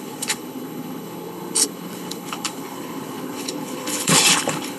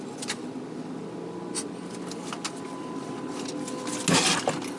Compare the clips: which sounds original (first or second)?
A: second